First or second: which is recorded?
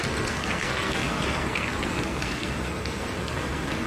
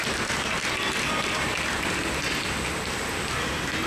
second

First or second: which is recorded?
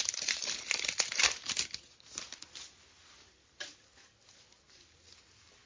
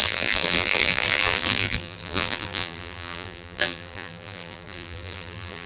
first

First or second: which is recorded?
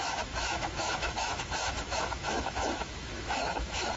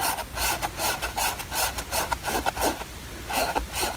second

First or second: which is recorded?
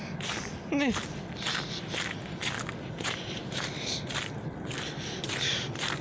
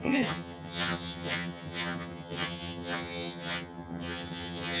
first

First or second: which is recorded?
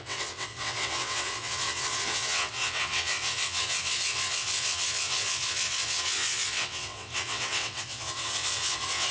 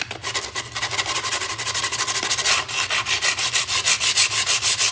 second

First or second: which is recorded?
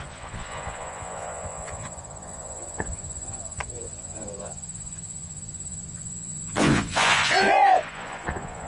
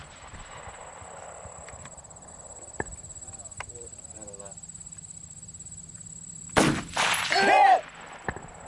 second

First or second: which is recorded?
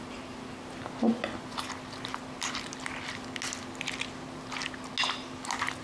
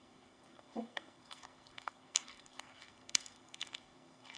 first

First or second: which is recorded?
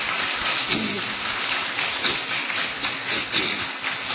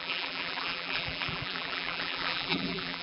first